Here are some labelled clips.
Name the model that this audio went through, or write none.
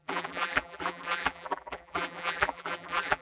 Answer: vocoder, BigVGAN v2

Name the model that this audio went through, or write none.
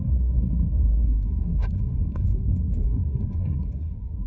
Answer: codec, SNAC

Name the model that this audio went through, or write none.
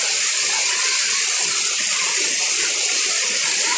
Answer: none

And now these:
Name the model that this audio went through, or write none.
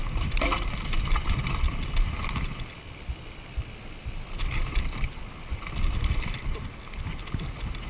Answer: none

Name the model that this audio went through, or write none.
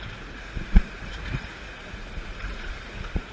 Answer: vocoder, Vocos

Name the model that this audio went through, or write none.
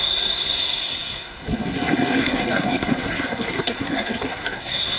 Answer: codec, SNAC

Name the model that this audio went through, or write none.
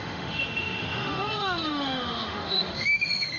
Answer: autoencoder, DAC-VAE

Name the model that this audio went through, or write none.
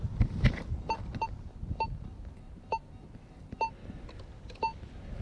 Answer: none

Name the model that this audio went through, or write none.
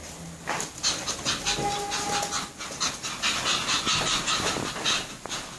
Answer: none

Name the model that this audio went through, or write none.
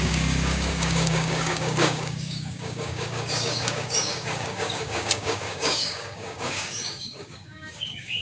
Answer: codec, DAC